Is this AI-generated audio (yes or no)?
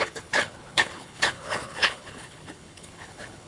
yes